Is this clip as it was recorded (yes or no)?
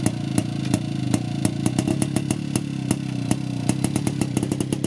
yes